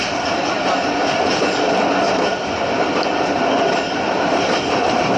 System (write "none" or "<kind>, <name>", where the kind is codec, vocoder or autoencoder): none